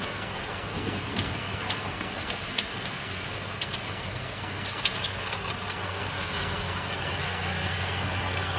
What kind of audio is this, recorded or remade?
remade